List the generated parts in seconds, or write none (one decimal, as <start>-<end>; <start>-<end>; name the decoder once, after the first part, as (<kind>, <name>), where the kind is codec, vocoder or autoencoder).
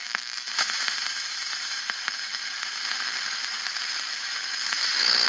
0.0-3.6 (autoencoder, DAC-VAE); 4.1-5.3